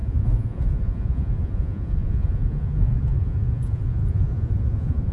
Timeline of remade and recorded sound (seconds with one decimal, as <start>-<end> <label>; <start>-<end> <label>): 0.0-5.1 remade

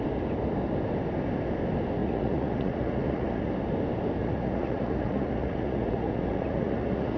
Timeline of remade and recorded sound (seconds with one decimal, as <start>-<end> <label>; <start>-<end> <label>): 0.0-2.0 recorded; 2.0-3.5 remade; 3.5-4.2 recorded; 4.2-7.2 remade

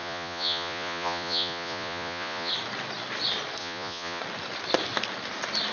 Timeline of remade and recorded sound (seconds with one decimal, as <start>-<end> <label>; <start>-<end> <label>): 0.0-2.5 remade; 2.5-3.6 recorded; 3.6-4.2 remade; 4.2-5.7 recorded